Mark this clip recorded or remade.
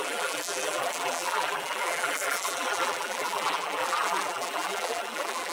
remade